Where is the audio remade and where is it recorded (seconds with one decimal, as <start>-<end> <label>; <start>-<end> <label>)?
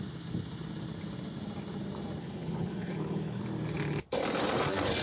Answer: 0.0-2.2 recorded; 2.2-3.4 remade; 3.4-5.0 recorded